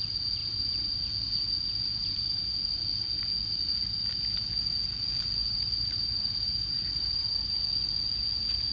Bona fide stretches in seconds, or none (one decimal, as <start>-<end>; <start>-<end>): 0.0-0.4; 1.1-1.9; 2.5-5.4; 7.6-8.7